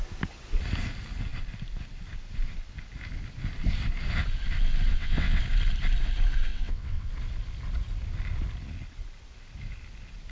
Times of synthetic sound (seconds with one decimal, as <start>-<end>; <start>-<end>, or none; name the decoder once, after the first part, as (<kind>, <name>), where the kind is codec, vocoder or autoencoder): 4.9-5.4 (vocoder, WaveNeXt); 6.5-7.1

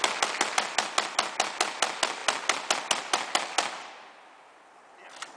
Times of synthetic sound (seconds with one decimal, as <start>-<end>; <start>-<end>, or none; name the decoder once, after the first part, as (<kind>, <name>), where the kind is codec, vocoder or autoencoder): none

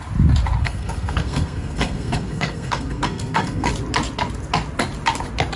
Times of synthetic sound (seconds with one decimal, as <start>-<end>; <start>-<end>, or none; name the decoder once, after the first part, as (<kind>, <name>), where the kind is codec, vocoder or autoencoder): 0.6-3.7 (codec, SNAC)

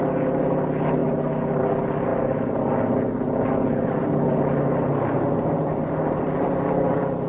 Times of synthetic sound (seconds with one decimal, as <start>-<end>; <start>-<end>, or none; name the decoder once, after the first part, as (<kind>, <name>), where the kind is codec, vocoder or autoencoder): none

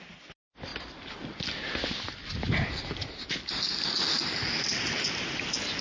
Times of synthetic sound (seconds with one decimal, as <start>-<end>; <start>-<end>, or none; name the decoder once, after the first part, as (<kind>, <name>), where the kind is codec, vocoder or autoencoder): none

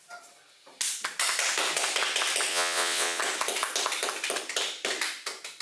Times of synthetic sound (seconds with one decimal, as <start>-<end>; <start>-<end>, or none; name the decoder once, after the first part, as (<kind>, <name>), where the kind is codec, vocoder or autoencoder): 2.5-3.2 (vocoder, WaveNeXt)

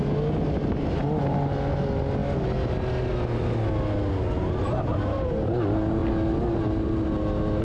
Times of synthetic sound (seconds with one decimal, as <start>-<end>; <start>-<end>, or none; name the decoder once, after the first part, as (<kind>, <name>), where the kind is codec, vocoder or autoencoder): none